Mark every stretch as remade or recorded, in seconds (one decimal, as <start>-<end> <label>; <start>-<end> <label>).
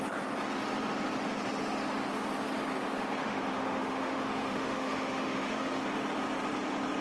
0.0-3.2 recorded; 3.2-5.8 remade; 5.8-7.0 recorded